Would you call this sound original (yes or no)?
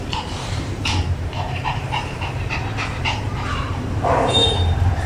no